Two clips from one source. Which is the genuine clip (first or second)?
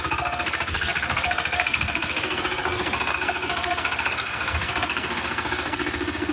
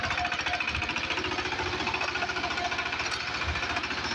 second